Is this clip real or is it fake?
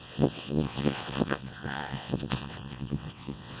fake